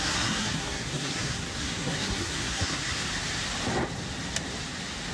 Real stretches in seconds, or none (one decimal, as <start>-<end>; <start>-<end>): 3.0-5.1